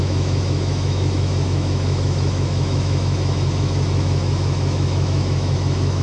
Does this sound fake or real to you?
fake